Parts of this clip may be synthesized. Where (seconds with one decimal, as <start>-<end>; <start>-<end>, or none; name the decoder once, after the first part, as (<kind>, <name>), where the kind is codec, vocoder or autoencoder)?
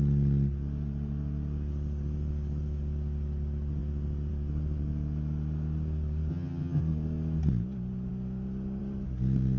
6.3-6.8 (vocoder, HiFi-GAN)